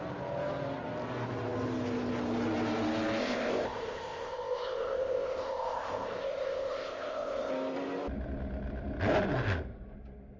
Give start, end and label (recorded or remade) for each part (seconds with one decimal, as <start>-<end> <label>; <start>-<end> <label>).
0.0-3.2 recorded; 3.2-7.5 remade; 7.5-10.4 recorded